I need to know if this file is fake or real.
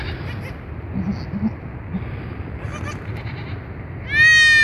real